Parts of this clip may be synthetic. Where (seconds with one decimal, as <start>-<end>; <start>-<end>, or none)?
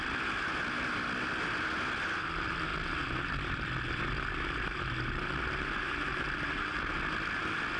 none